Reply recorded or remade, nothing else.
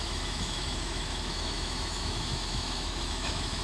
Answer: remade